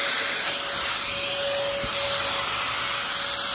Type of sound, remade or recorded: recorded